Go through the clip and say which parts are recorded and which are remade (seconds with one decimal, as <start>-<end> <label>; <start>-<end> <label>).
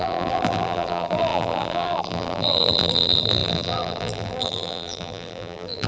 0.0-5.9 remade